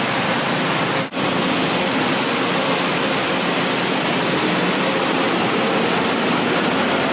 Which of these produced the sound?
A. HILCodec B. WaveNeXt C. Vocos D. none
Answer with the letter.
D